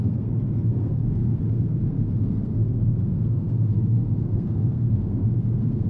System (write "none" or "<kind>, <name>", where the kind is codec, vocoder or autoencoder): codec, SNAC